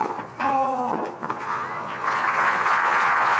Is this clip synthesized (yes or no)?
yes